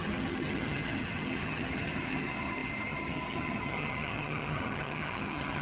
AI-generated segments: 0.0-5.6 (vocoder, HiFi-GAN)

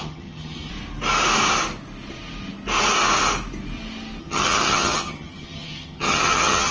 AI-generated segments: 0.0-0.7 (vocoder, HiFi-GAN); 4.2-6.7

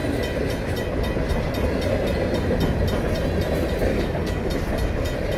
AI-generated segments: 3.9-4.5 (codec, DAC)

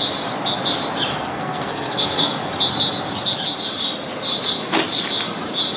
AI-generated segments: 1.1-2.3 (codec, SNAC)

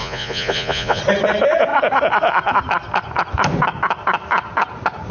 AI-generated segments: 0.0-1.0 (vocoder, Vocos)

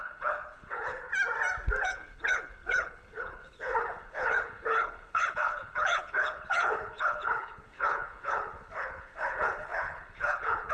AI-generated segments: 0.0-1.1 (codec, HILCodec); 1.8-10.7